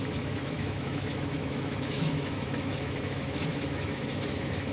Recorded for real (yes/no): no